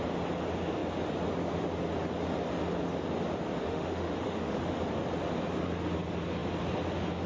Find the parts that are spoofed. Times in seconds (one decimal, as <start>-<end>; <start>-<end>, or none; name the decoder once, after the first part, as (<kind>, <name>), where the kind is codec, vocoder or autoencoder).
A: 3.6-4.8 (autoencoder, DAC-VAE)